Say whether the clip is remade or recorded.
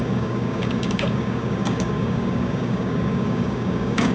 remade